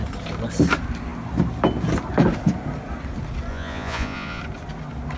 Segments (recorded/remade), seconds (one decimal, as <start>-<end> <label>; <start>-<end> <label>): 0.0-3.5 recorded; 3.5-4.4 remade; 4.4-5.2 recorded